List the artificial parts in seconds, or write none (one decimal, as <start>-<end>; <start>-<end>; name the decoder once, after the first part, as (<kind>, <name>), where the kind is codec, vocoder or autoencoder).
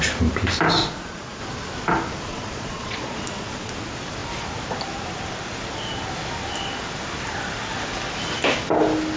0.8-1.4 (vocoder, Vocos); 2.3-3.7